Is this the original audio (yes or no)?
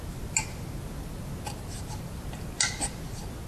yes